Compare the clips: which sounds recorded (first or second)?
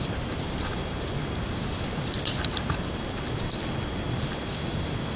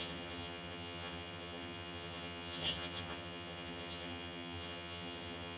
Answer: first